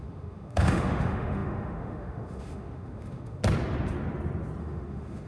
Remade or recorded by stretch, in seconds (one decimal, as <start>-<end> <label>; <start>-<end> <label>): 0.0-3.4 remade; 3.4-4.6 recorded; 4.6-5.3 remade